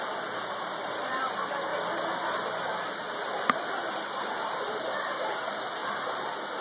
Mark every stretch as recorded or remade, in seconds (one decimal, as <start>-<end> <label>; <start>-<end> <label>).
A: 0.0-1.7 remade; 1.7-4.2 recorded; 4.2-5.8 remade; 5.8-6.6 recorded